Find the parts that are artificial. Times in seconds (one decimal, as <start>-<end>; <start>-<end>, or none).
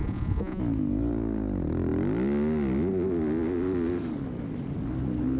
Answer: 0.0-0.6